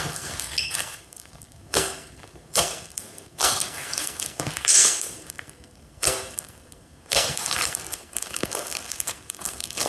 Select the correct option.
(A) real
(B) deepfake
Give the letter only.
B